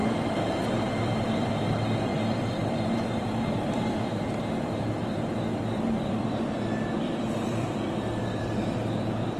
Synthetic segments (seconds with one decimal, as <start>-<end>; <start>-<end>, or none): 1.0-9.4